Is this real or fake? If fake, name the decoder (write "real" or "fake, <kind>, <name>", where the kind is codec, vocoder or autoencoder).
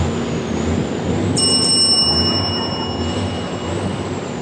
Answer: real